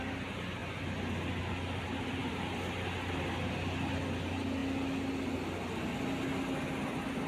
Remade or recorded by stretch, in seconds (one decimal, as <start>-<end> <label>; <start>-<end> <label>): 0.0-7.3 recorded